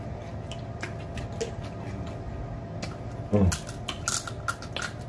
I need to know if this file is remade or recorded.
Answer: recorded